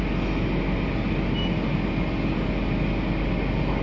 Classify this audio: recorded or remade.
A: recorded